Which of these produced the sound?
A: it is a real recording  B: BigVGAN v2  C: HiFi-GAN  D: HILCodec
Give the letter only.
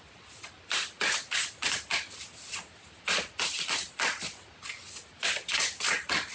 B